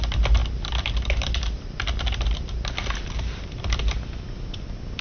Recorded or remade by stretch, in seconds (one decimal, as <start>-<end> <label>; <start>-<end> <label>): 0.0-5.0 recorded